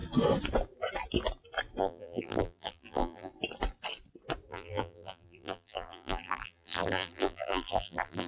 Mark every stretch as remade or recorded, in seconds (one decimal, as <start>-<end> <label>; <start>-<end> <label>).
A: 0.0-1.8 recorded; 1.8-3.3 remade; 3.3-4.5 recorded; 4.5-8.3 remade